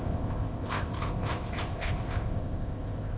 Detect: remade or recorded remade